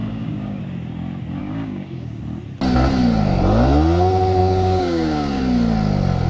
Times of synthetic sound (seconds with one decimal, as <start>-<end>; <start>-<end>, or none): 0.0-0.6; 1.4-2.2; 4.4-5.4